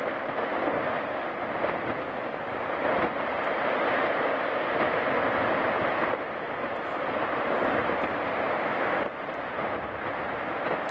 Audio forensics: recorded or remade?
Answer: recorded